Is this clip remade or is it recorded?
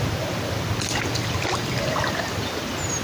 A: recorded